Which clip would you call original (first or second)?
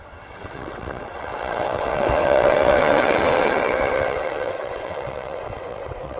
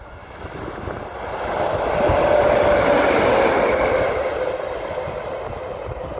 second